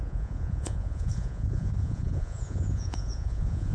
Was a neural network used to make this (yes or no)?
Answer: yes